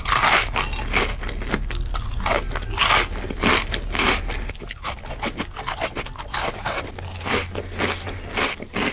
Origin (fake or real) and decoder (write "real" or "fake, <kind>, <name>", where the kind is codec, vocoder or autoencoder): real